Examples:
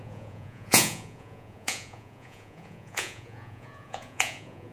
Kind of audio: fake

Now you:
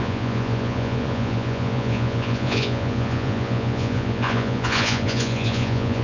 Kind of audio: fake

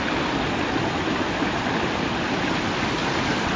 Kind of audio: real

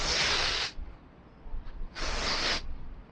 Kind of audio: real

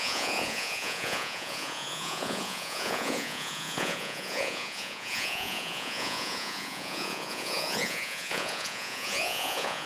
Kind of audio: fake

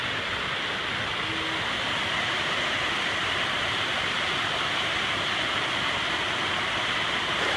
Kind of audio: real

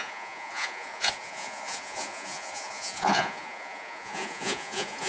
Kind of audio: fake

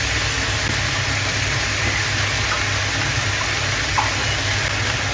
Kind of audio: real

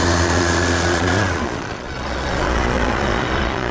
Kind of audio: fake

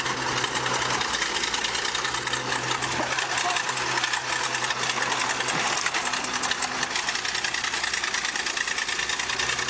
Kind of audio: real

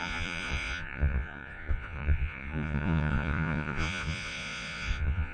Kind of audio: fake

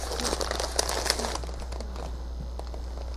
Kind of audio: real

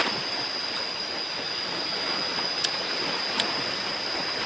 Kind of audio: real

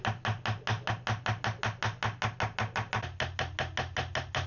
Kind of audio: real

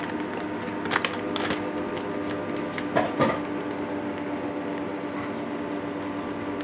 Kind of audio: real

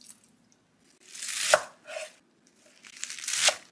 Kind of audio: real